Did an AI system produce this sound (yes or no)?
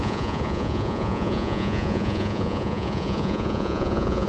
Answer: yes